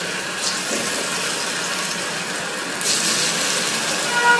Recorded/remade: recorded